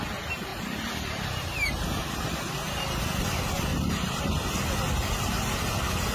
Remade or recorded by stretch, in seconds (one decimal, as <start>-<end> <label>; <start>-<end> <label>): 0.0-0.5 recorded; 0.5-3.0 remade; 3.0-3.7 recorded; 3.7-4.2 remade; 4.2-6.1 recorded